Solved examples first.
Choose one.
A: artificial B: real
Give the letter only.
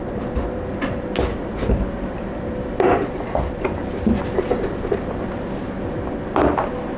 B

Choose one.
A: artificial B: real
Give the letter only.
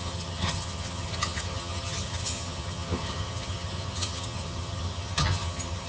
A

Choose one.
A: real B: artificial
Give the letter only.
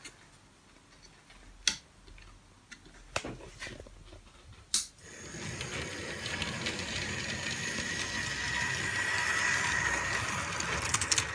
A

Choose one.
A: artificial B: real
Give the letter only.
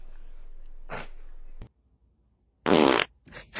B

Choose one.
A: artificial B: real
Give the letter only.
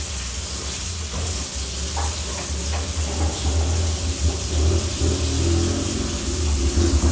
B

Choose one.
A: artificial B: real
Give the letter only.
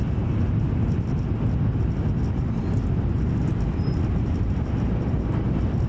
B